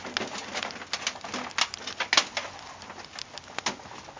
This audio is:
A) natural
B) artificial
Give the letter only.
A